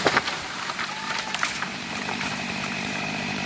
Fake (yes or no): yes